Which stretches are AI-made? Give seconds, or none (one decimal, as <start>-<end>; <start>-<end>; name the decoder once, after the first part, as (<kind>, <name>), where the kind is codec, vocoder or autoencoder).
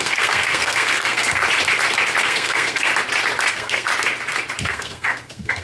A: 0.0-1.4 (codec, SNAC); 2.2-2.9; 3.5-3.9; 4.6-5.6